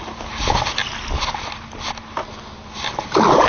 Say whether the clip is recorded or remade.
recorded